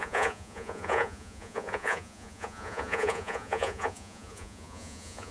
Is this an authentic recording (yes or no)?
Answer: no